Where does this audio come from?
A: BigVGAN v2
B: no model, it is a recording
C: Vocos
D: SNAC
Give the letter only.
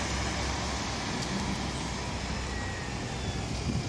B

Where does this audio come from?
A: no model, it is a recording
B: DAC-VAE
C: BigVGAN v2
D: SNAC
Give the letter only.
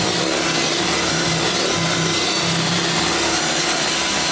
A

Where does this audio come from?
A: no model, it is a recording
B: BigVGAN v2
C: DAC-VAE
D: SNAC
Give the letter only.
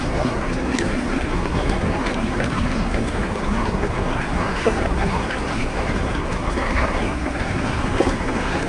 D